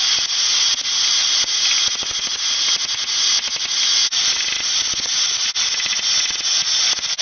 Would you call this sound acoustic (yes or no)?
yes